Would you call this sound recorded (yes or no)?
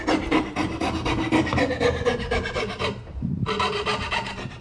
yes